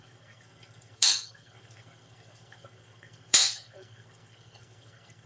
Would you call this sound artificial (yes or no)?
yes